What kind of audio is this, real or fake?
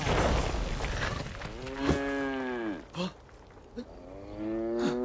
real